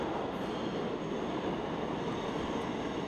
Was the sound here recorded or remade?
recorded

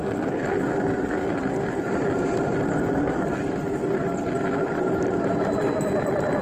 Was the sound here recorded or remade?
recorded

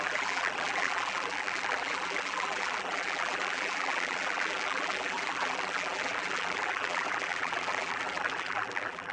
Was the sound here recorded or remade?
remade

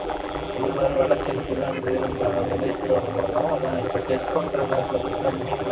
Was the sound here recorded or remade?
remade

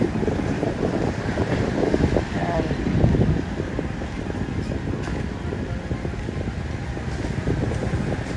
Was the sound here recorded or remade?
remade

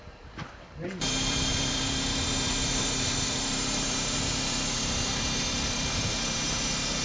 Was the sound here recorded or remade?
remade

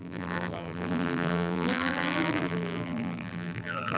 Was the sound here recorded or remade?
remade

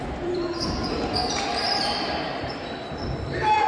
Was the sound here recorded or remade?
remade